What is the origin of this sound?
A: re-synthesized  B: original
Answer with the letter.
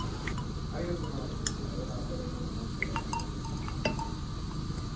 B